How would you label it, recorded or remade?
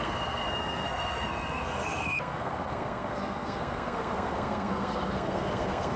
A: remade